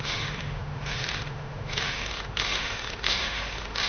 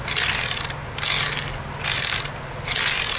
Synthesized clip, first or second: first